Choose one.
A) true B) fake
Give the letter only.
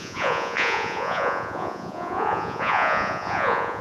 B